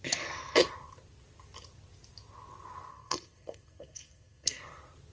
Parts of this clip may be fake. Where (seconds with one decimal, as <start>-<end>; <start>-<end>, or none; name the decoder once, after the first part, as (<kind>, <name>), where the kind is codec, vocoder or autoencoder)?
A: 2.9-4.6 (codec, SNAC)